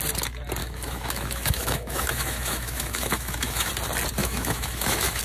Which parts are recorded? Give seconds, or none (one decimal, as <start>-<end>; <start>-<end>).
0.0-0.6; 3.7-4.2